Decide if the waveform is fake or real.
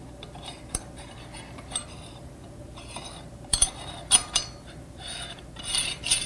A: fake